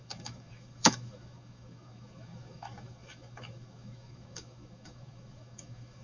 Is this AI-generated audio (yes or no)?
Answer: yes